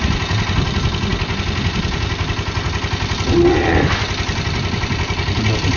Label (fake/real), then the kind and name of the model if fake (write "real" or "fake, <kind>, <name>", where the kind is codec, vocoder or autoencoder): real